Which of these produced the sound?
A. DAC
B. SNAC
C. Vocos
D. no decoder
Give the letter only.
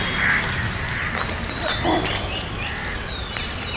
D